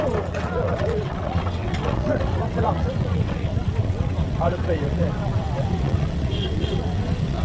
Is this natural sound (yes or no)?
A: no